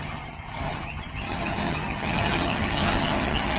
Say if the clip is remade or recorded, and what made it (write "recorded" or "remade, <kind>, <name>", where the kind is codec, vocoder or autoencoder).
remade, vocoder, HiFi-GAN